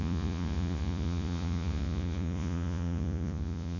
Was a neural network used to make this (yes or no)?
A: yes